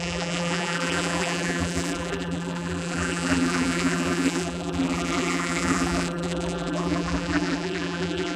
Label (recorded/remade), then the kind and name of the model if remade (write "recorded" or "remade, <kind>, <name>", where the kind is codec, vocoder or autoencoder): remade, vocoder, BigVGAN v2